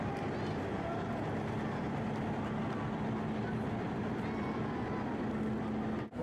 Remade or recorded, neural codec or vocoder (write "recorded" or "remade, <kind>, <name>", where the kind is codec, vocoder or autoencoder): recorded